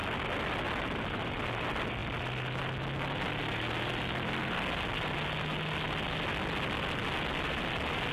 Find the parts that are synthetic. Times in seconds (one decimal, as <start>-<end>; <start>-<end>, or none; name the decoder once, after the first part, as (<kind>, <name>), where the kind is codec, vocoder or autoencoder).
none